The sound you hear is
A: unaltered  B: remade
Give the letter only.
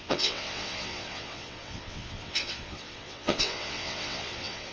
B